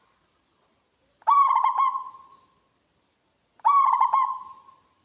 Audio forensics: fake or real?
real